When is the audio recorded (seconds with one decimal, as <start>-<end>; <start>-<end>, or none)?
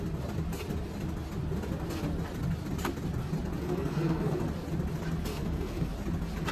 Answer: 0.0-3.6; 4.4-5.3; 5.9-6.5